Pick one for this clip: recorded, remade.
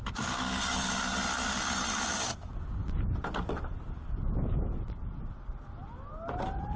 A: recorded